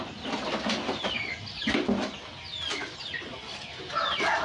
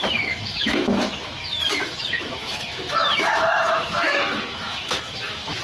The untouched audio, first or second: first